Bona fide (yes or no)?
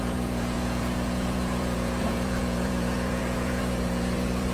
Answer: no